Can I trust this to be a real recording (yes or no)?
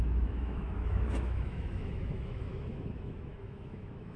no